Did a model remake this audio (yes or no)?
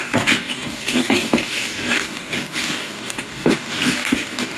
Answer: yes